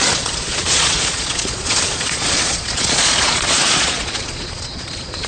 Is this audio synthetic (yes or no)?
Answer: yes